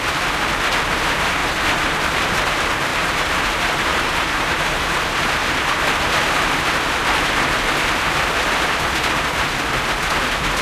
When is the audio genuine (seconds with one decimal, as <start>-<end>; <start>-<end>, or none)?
0.0-1.4; 2.4-2.9; 3.5-3.9; 5.0-10.6